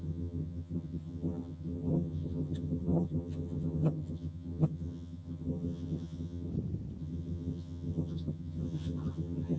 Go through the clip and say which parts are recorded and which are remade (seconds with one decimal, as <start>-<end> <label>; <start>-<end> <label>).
0.0-6.5 remade; 6.5-7.0 recorded; 7.0-9.6 remade